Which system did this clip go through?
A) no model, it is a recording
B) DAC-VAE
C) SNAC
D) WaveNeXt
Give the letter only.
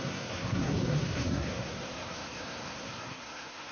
C